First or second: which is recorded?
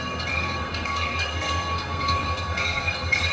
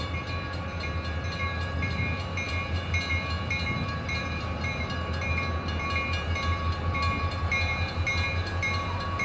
second